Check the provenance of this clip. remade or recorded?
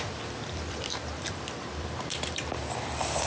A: remade